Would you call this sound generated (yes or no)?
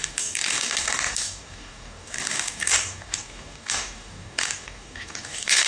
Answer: yes